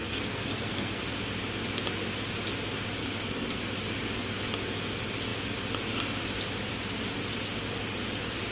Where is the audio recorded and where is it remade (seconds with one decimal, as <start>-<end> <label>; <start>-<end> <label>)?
0.0-1.0 remade; 1.0-3.0 recorded; 3.0-3.6 remade; 3.6-8.5 recorded